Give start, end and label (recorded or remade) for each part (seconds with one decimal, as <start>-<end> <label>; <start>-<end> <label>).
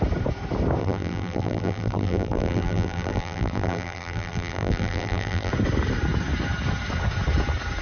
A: 0.0-0.8 recorded; 0.8-5.5 remade; 5.5-7.8 recorded